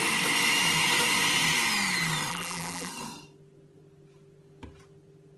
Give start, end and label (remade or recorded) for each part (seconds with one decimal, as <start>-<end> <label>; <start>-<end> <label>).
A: 0.0-2.3 recorded; 2.3-2.9 remade; 2.9-5.4 recorded